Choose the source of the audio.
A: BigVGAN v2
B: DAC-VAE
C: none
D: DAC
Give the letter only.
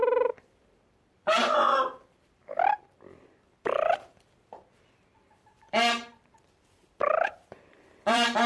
A